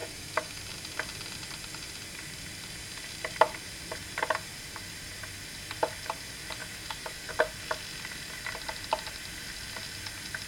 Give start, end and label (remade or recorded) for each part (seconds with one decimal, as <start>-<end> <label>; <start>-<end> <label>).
0.0-0.6 remade; 0.6-6.6 recorded; 6.6-7.3 remade; 7.3-10.5 recorded